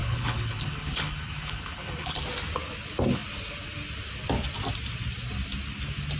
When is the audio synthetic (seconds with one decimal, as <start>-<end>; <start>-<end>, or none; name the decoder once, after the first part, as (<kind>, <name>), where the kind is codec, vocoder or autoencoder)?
0.0-2.2 (codec, HILCodec)